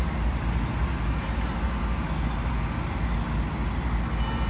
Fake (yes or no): no